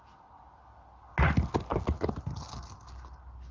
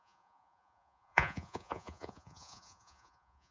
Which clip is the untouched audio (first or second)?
first